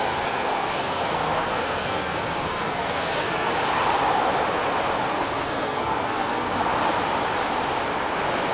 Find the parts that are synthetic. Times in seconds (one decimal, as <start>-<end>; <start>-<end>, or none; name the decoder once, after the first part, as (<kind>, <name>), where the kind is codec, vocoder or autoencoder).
0.0-3.5 (codec, SNAC); 5.1-6.7